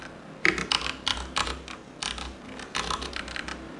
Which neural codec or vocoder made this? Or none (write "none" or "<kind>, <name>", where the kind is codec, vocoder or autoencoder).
none